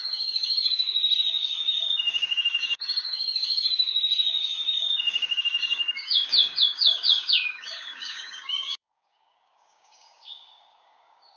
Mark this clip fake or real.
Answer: fake